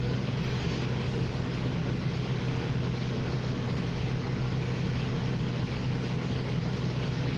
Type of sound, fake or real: fake